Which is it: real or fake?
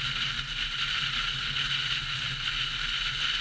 real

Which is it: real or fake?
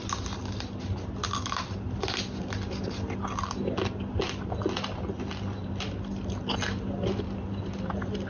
real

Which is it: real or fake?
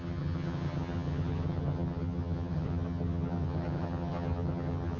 fake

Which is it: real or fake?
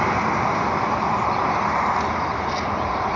real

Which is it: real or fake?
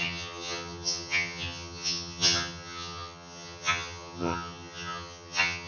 fake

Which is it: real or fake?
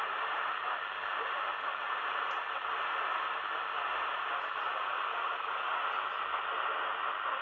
real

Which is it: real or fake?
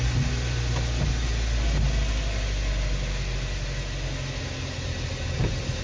real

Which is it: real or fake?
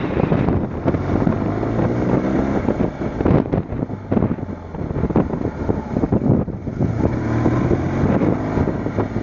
real